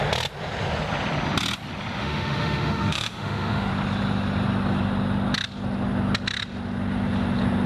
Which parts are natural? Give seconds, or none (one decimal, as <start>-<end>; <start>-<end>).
0.0-2.0; 3.7-7.7